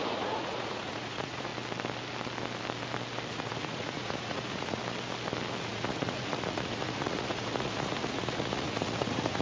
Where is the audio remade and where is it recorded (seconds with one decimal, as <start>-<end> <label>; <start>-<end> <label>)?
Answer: 0.0-1.5 remade; 1.5-3.3 recorded; 3.3-4.8 remade; 4.8-5.6 recorded; 5.6-9.4 remade